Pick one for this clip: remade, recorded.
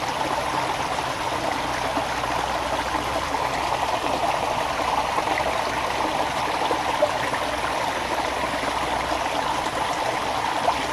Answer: recorded